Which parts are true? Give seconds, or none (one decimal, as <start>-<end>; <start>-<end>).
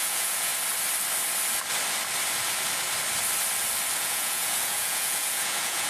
0.5-4.0